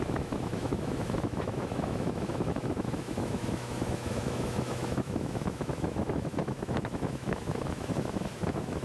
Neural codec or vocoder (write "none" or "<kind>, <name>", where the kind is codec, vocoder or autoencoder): autoencoder, DAC-VAE